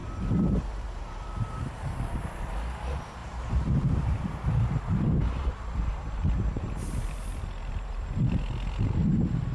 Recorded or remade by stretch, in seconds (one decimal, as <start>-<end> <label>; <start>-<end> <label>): 0.0-1.9 remade; 1.9-3.2 recorded; 3.2-8.2 remade; 8.2-9.5 recorded